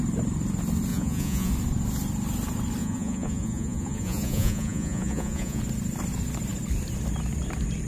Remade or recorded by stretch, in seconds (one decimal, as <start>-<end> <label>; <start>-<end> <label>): 0.0-0.9 recorded; 0.9-1.5 remade; 1.5-2.8 recorded; 2.8-5.6 remade; 5.6-7.9 recorded